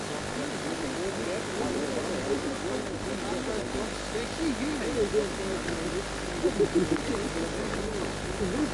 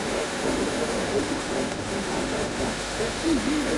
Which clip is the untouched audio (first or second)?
first